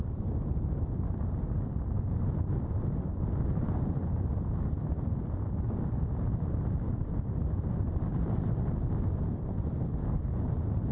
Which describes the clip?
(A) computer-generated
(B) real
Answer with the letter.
B